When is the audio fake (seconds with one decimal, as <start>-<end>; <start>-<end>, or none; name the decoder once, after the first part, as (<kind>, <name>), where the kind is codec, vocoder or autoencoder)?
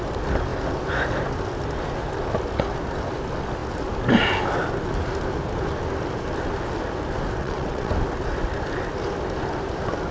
7.4-7.9 (vocoder, WaveNeXt)